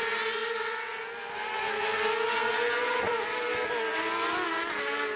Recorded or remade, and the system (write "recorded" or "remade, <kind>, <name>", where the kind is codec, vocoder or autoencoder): recorded